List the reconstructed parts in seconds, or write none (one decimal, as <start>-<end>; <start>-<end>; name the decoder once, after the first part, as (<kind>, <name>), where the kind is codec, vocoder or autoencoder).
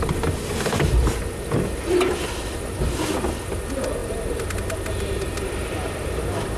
none